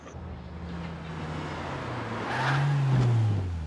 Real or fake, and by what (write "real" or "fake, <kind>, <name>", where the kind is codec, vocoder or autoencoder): real